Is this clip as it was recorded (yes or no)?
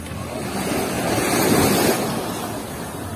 yes